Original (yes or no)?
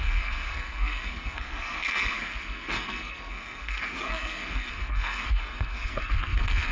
no